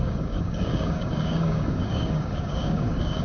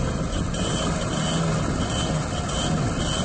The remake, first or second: first